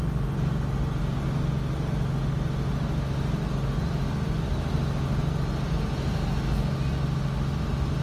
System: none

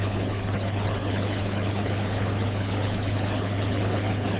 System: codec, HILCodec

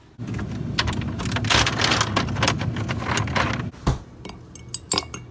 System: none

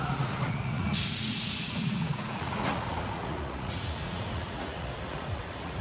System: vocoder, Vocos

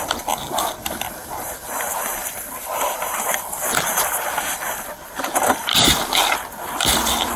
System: none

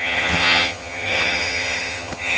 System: vocoder, HiFi-GAN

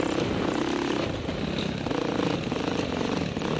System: vocoder, BigVGAN v2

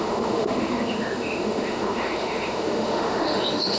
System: autoencoder, DAC-VAE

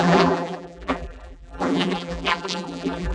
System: vocoder, BigVGAN v2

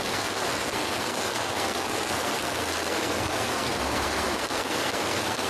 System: codec, SNAC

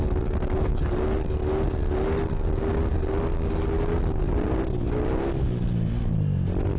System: none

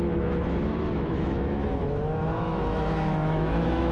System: autoencoder, DAC-VAE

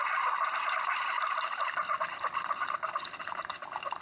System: none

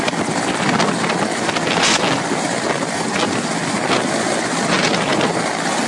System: none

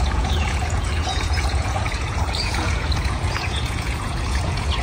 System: vocoder, Vocos